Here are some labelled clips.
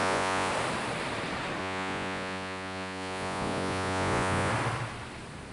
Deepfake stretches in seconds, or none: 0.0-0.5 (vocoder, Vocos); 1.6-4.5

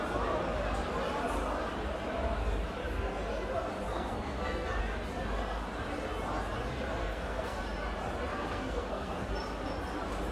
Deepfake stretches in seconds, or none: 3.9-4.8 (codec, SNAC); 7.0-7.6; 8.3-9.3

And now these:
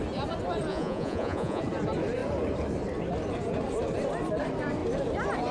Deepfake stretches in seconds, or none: 0.7-1.6 (vocoder, Vocos)

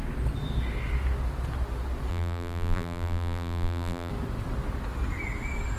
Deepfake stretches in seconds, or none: 2.1-4.1 (vocoder, BigVGAN v2)